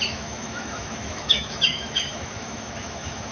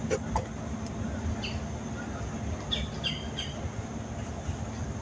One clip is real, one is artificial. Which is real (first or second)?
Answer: second